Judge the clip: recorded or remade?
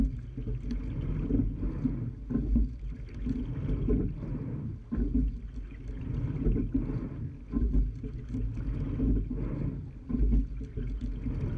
recorded